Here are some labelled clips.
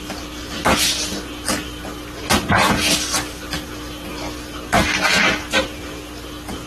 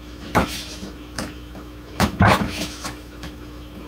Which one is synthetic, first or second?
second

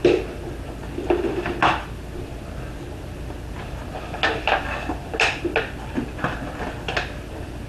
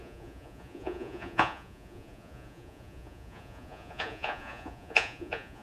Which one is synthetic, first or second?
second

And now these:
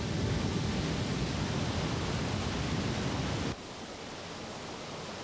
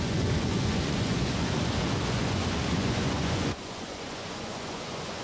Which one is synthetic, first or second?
second